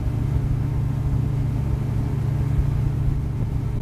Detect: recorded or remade recorded